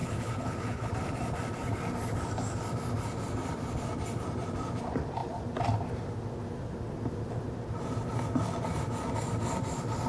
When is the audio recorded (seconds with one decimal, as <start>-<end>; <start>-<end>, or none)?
0.9-10.1